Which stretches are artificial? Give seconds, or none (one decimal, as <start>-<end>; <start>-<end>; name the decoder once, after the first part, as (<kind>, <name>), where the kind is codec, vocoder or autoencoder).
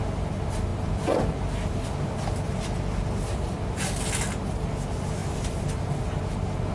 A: none